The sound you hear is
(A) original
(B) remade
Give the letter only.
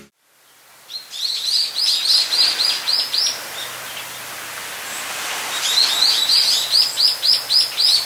A